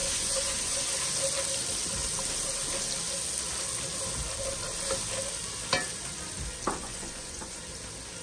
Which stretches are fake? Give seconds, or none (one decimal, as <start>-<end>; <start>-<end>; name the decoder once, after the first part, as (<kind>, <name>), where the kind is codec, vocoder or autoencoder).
0.0-1.0 (vocoder, Vocos); 6.8-7.6